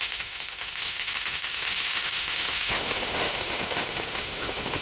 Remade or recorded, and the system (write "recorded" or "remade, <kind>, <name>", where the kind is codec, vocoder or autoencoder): remade, autoencoder, DAC-VAE